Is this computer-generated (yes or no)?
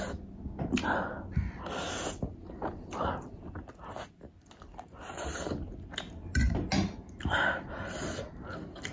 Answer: no